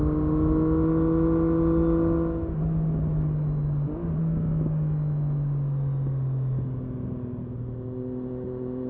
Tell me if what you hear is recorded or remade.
recorded